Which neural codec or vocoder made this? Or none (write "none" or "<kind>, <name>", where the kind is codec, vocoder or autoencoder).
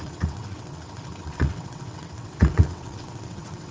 vocoder, WaveNeXt